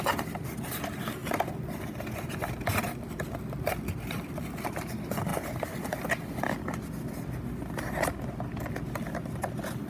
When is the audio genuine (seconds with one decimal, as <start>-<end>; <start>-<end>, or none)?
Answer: 0.0-9.9